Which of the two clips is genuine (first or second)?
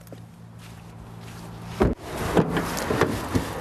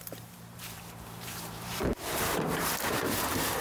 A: first